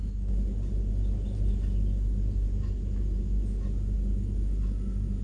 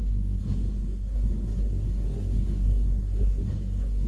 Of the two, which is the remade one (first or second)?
second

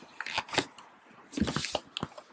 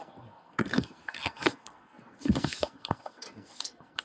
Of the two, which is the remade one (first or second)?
second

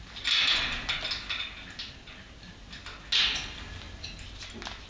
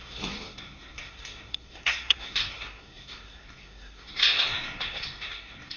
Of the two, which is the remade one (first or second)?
second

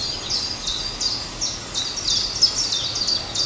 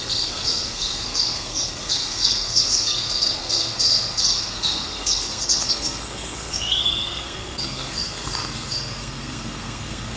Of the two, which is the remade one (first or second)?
second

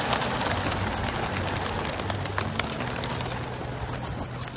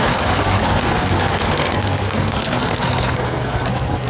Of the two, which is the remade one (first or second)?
second